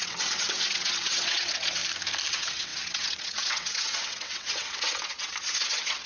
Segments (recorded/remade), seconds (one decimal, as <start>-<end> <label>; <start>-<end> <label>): 0.0-1.8 remade; 1.8-2.3 recorded; 2.3-6.1 remade